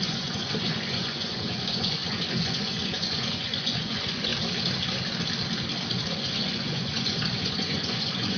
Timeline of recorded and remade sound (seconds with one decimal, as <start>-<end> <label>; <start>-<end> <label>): 0.0-4.3 remade; 4.3-5.9 recorded; 5.9-8.4 remade